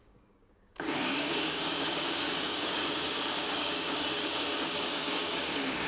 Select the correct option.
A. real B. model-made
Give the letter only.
B